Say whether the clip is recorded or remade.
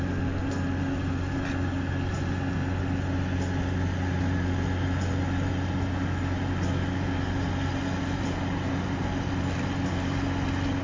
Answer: recorded